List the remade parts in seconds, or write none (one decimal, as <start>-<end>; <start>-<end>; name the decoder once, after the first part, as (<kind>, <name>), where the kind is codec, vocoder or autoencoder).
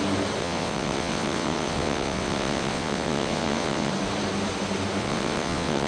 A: 0.4-3.9 (vocoder, WaveNeXt); 5.0-5.9